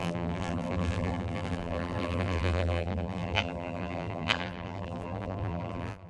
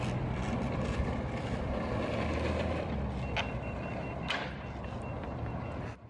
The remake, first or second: first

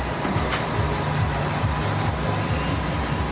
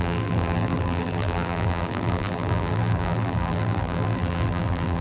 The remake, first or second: second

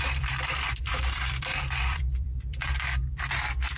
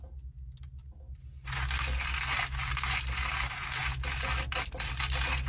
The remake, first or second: first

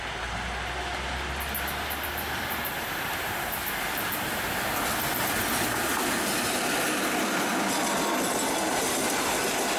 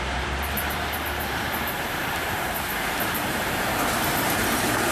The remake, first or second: second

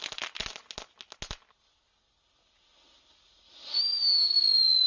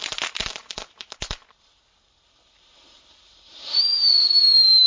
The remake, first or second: second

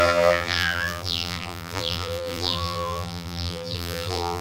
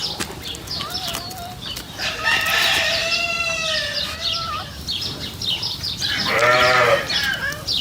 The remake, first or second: first